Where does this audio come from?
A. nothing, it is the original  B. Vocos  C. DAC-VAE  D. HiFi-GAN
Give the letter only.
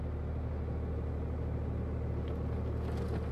A